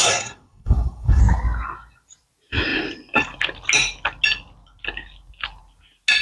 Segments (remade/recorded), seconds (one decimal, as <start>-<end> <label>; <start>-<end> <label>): 0.0-1.2 remade; 1.2-6.2 recorded